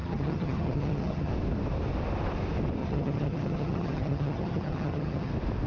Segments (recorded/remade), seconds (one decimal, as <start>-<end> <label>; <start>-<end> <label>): 0.0-1.3 remade; 1.3-2.8 recorded; 2.8-5.3 remade; 5.3-5.7 recorded